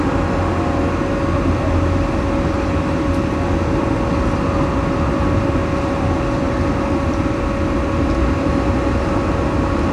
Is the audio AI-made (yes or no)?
no